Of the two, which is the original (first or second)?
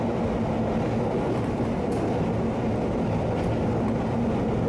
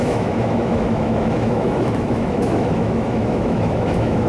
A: first